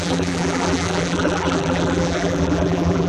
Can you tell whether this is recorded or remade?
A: remade